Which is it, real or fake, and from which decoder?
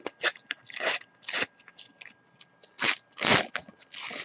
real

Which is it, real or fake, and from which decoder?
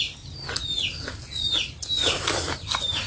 real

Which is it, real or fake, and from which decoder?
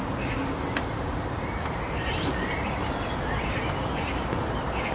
real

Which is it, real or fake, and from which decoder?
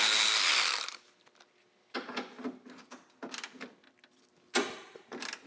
real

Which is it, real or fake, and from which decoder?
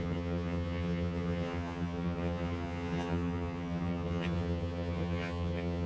fake, vocoder, HiFi-GAN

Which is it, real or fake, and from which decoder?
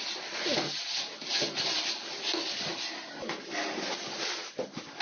real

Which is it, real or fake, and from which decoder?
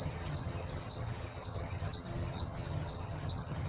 fake, vocoder, HiFi-GAN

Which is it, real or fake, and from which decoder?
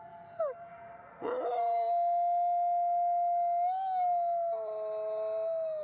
real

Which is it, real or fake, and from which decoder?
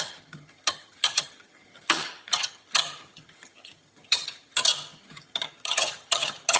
fake, vocoder, HiFi-GAN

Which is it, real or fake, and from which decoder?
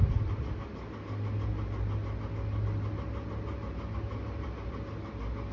real